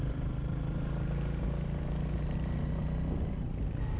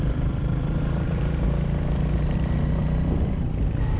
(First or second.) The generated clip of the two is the second